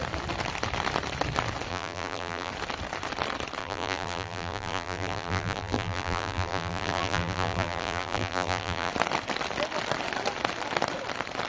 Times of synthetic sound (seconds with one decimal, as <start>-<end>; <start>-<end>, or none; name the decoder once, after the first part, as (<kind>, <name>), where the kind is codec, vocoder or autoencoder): 1.7-2.5 (vocoder, BigVGAN v2); 3.6-8.9